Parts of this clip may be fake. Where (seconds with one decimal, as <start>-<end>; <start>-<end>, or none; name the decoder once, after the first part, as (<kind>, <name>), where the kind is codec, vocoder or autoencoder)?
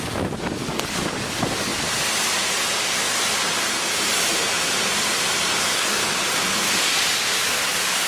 0.0-1.7 (codec, DAC); 5.6-6.0; 6.7-8.1